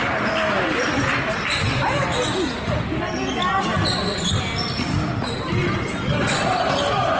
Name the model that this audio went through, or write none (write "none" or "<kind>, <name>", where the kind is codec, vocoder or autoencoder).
none